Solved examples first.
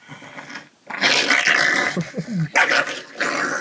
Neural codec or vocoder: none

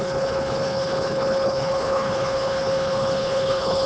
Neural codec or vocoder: codec, HILCodec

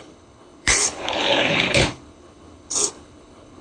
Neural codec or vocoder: codec, HILCodec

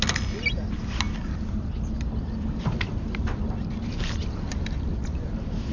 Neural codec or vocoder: none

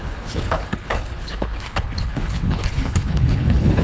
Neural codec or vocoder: codec, HILCodec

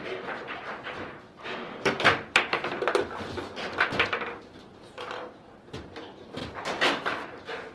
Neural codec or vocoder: none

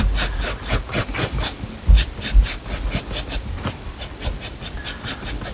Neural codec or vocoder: none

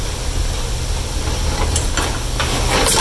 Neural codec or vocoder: none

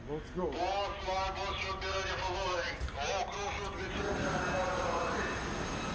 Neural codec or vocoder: none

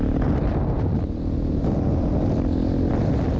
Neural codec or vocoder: none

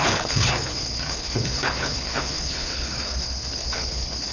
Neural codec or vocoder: codec, HILCodec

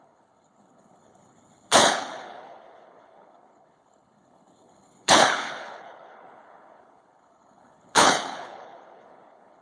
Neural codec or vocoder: codec, HILCodec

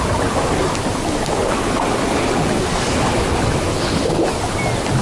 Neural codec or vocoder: none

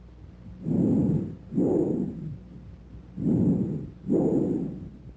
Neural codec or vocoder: none